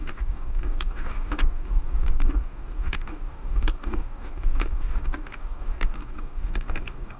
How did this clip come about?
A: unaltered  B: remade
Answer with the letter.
B